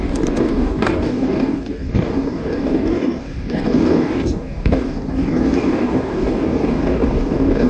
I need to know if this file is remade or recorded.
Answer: remade